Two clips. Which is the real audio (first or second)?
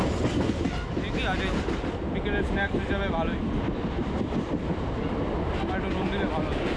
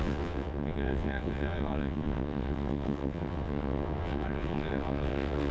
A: first